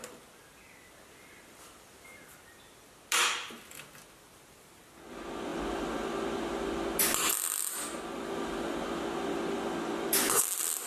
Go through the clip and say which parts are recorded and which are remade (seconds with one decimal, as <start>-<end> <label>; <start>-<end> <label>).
0.0-10.9 recorded